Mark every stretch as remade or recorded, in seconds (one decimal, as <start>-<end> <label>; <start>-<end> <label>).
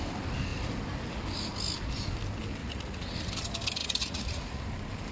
0.0-2.6 recorded; 2.6-3.3 remade; 3.3-3.8 recorded; 3.8-4.6 remade; 4.6-5.1 recorded